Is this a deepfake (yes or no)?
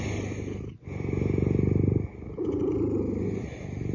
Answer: no